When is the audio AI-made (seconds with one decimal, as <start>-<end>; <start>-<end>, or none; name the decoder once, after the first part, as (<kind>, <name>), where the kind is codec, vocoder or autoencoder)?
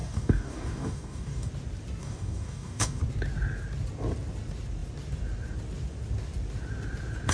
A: 0.0-1.5 (codec, DAC); 2.0-3.0